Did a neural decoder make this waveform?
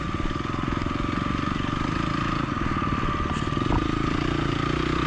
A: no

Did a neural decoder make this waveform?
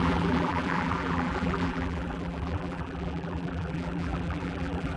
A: yes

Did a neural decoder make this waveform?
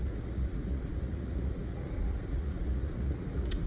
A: yes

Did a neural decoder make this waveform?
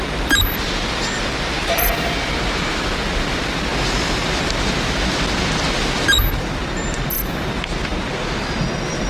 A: no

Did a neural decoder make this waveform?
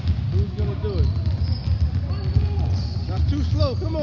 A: no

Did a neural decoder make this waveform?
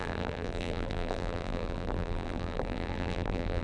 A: yes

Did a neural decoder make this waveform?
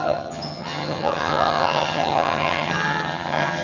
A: yes